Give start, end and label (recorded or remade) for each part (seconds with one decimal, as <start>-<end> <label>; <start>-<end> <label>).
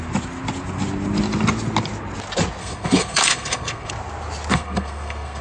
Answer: 0.0-2.6 recorded; 2.6-3.9 remade; 3.9-4.5 recorded; 4.5-5.4 remade